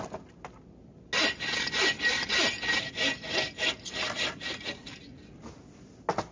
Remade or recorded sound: recorded